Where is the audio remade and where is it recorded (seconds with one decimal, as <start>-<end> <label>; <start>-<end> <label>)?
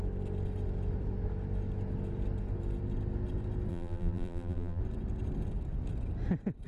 0.0-3.7 recorded; 3.7-4.8 remade; 4.8-6.7 recorded